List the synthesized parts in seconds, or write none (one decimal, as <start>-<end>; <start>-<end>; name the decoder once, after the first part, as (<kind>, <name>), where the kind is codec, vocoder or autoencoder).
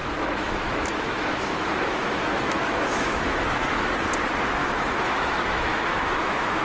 0.0-3.9 (autoencoder, DAC-VAE); 4.6-6.6